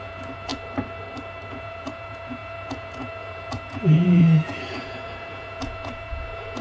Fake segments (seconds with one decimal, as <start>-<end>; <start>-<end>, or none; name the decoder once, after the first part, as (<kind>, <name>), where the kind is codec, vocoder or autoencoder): 0.0-0.5 (vocoder, Vocos); 1.5-6.6